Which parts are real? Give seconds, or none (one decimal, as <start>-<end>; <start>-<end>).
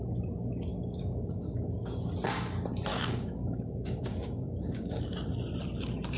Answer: 0.0-0.7; 2.1-2.9; 5.2-6.2